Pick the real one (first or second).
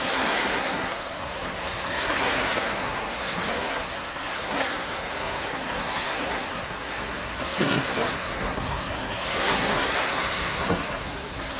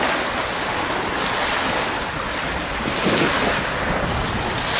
second